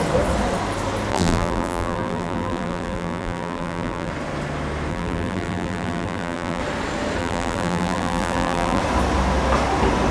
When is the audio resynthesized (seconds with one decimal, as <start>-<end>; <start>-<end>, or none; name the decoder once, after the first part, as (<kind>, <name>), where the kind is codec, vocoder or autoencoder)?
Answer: 1.1-4.1 (vocoder, BigVGAN v2); 4.9-6.6; 7.2-8.8